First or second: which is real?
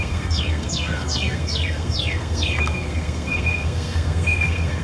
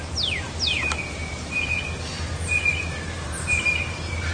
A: second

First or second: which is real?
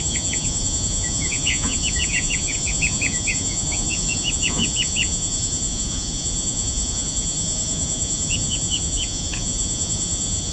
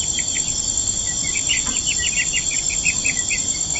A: second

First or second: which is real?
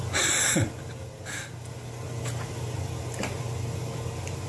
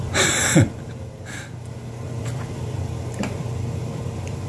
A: first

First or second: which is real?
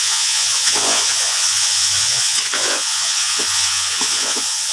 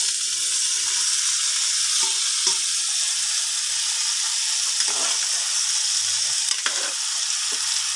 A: second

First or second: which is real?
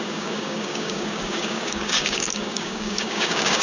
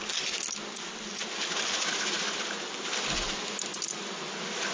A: second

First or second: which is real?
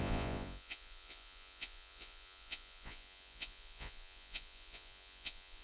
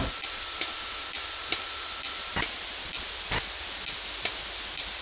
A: second